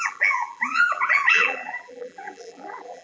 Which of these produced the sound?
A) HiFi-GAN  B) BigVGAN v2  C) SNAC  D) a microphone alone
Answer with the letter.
B